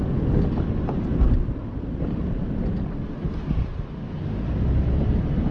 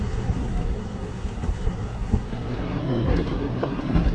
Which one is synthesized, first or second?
second